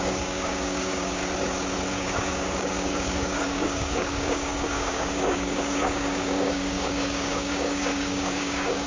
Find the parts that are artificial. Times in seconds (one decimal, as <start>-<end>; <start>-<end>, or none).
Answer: 0.0-1.2; 1.9-8.9